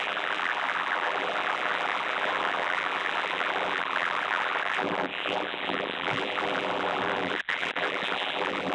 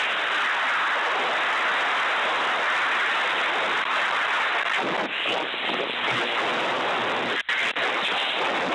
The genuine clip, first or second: second